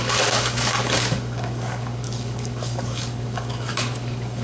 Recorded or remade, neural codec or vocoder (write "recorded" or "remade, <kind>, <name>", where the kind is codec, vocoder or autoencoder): remade, codec, DAC